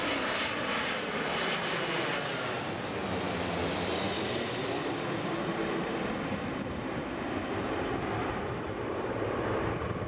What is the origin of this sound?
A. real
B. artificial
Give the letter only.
A